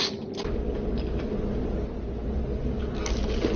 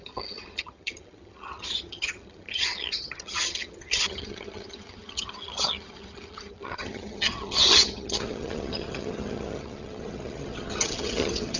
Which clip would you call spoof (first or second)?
second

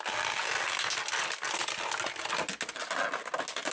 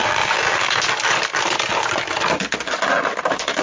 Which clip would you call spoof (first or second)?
second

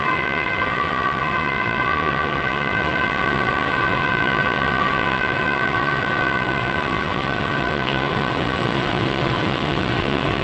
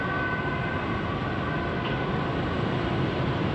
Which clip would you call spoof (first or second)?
first